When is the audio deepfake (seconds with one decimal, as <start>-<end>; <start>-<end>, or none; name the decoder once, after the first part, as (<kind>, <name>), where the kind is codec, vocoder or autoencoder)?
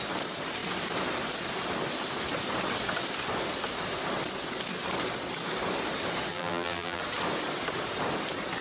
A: 6.3-7.0 (vocoder, BigVGAN v2)